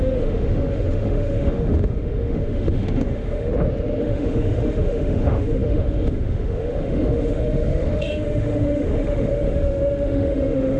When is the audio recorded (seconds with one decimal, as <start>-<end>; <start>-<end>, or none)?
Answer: 3.5-4.0